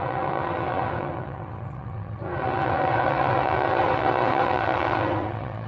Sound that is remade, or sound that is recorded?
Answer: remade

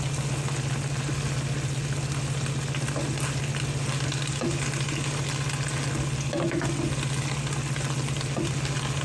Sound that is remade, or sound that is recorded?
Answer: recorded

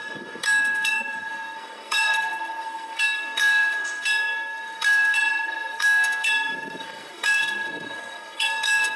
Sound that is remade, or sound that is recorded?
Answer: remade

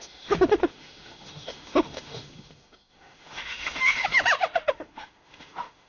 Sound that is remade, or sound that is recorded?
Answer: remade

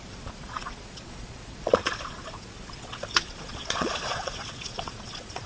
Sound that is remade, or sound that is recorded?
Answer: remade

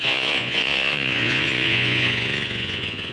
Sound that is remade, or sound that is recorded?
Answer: remade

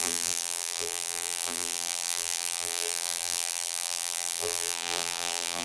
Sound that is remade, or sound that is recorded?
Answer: remade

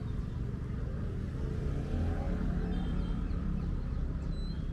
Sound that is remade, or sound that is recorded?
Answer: recorded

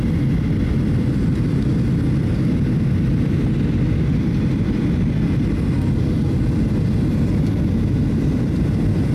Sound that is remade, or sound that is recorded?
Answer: recorded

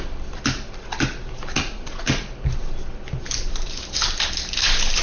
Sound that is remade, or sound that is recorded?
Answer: recorded